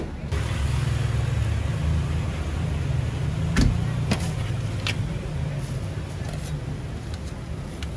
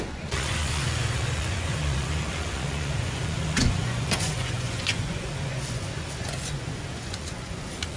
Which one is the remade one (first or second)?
second